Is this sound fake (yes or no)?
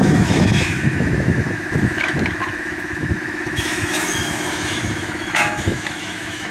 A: yes